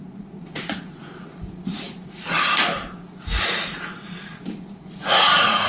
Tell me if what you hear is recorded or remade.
remade